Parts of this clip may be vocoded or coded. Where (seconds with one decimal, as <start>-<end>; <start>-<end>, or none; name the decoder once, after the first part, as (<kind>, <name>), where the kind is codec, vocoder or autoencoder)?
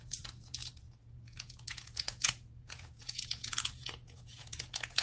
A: 0.0-5.0 (vocoder, Vocos)